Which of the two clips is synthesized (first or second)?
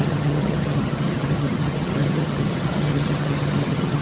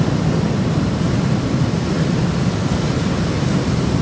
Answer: first